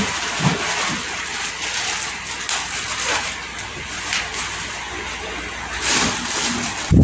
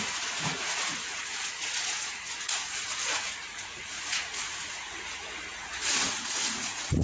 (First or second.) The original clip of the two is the first